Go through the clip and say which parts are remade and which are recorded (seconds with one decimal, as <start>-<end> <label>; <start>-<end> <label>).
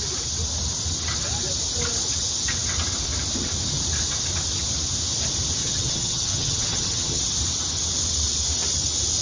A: 0.0-5.6 recorded; 5.6-7.2 remade; 7.2-9.2 recorded